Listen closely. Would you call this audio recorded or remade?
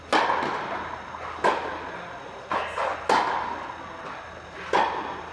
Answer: recorded